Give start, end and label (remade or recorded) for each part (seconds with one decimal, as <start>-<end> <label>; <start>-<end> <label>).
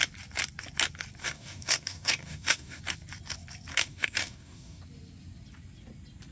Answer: 0.0-1.2 recorded; 1.2-2.8 remade; 2.8-3.7 recorded; 3.7-4.8 remade; 4.8-6.3 recorded